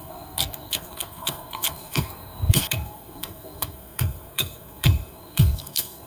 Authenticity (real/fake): fake